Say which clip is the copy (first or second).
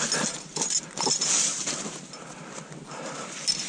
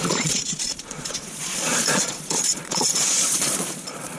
second